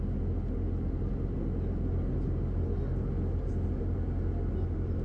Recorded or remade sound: recorded